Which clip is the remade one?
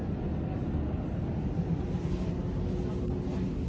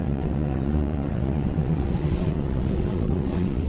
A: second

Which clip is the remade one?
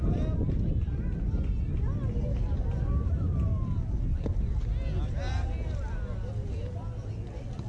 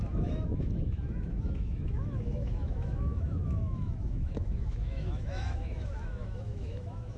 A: second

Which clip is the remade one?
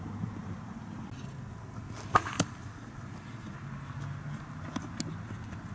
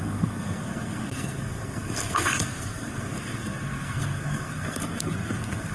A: second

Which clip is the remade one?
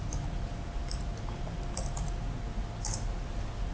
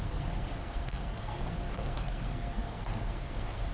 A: second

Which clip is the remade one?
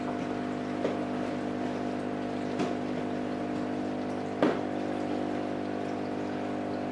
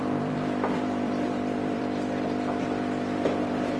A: second